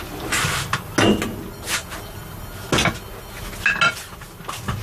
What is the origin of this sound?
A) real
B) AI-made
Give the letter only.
A